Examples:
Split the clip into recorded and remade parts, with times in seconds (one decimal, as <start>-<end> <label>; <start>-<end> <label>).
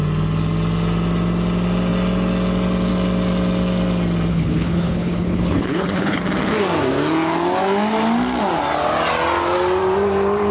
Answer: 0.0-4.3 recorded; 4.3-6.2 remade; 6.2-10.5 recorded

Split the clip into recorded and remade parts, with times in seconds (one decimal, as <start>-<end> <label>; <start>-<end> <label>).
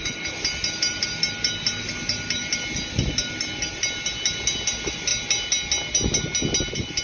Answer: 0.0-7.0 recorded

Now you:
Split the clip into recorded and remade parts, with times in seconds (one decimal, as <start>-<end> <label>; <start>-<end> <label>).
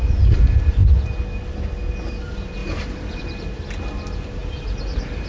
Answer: 0.0-2.6 recorded; 2.6-3.2 remade; 3.2-4.4 recorded; 4.4-5.3 remade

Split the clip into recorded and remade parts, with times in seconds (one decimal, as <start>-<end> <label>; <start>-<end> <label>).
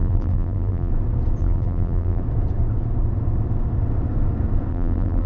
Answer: 0.0-0.9 remade; 0.9-1.4 recorded; 1.4-2.2 remade; 2.2-4.7 recorded; 4.7-5.3 remade